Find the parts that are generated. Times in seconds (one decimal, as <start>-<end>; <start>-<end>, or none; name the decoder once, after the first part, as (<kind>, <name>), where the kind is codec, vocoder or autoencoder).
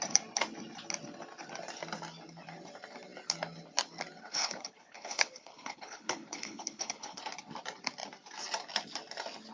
4.3-7.2 (codec, HILCodec)